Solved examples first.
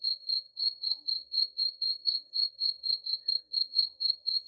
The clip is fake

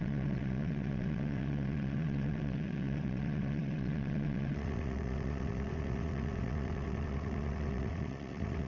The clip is fake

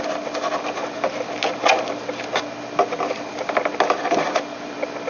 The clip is real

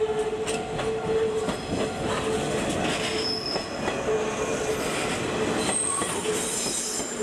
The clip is real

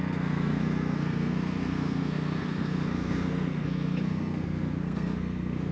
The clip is fake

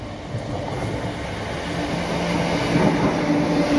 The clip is real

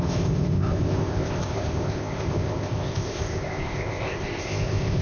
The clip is fake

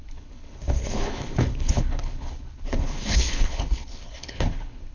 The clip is fake